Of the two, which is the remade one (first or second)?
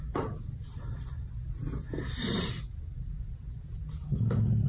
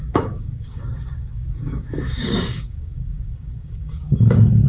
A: second